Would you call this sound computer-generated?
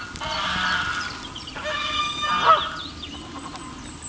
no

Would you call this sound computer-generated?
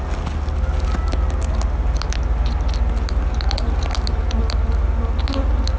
no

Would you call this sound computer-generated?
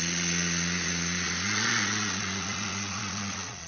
yes